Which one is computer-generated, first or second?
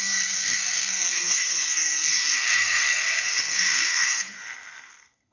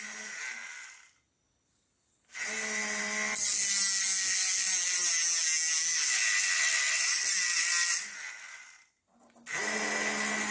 first